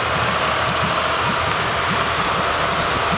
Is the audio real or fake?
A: real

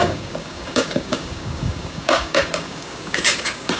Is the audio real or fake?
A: fake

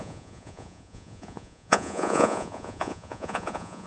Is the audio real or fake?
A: fake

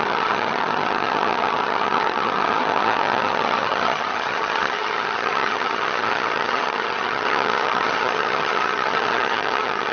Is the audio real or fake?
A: fake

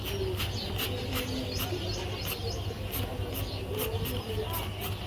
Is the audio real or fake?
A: real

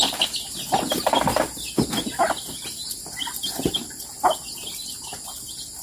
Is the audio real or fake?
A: real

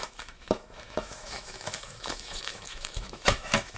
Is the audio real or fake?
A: fake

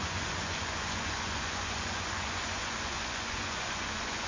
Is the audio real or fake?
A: fake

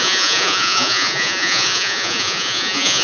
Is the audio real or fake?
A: fake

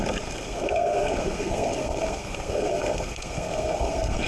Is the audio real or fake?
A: fake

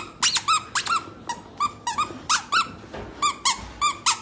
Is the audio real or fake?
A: real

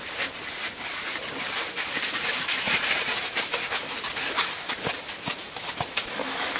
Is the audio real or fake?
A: fake